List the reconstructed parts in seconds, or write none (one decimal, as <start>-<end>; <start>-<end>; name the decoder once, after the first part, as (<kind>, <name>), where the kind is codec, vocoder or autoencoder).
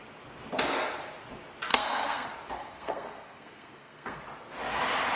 1.7-2.3 (codec, SNAC); 2.7-4.2